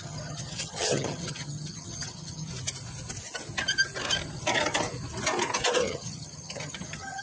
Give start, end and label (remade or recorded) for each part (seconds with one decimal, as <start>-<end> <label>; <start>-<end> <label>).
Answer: 0.0-2.5 remade; 2.5-5.8 recorded; 5.8-7.2 remade